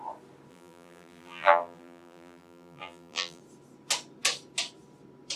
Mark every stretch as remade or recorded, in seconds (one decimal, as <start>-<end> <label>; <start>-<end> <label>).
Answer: 0.0-0.5 recorded; 0.5-3.4 remade; 3.4-5.4 recorded